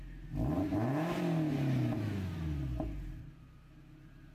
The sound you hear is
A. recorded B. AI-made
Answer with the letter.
A